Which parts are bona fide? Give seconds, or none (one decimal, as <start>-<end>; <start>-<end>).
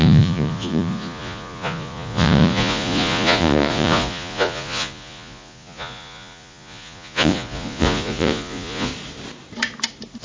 8.9-10.2